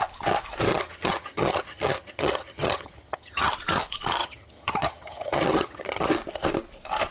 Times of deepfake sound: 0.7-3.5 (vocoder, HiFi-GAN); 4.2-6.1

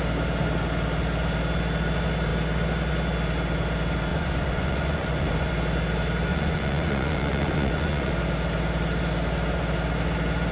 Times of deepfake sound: 4.1-5.5 (vocoder, Vocos); 6.3-8.1

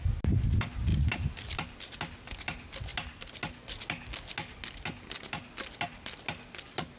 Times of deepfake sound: none

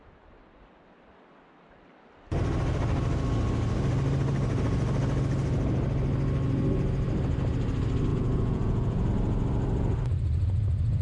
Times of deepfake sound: 8.1-9.1 (vocoder, Vocos)